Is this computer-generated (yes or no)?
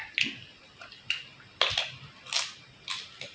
no